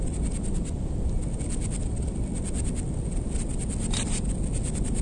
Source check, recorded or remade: recorded